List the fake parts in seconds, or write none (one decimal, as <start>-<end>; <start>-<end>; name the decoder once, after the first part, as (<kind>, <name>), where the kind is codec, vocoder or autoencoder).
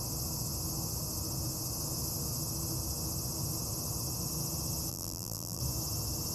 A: 4.9-5.6 (vocoder, BigVGAN v2)